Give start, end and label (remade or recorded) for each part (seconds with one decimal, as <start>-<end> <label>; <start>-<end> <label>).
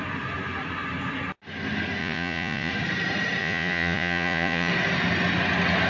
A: 0.0-2.0 recorded; 2.0-2.7 remade; 2.7-3.4 recorded; 3.4-4.7 remade; 4.7-5.9 recorded